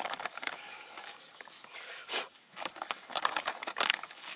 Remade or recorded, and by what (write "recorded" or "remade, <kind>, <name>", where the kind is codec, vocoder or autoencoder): remade, codec, DAC